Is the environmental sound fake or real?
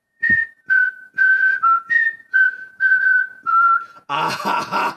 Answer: fake